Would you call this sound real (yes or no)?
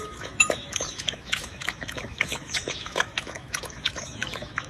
no